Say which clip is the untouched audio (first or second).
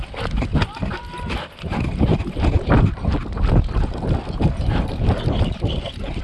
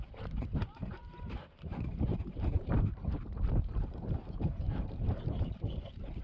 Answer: first